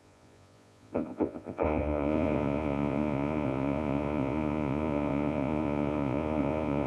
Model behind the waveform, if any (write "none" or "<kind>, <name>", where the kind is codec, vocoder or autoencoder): vocoder, Vocos